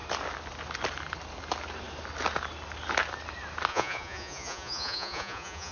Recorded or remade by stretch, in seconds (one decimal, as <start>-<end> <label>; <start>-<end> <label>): 0.0-3.7 recorded; 3.7-5.7 remade